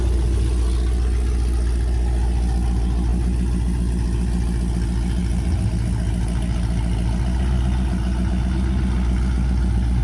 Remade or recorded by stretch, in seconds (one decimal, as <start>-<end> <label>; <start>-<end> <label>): 0.0-10.0 recorded